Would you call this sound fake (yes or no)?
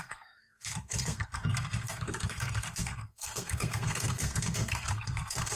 yes